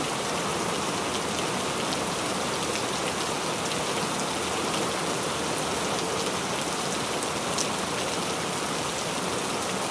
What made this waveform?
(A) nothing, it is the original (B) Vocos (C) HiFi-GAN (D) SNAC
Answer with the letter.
A